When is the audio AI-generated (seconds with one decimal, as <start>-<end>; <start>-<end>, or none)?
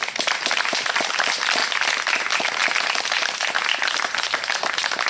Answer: none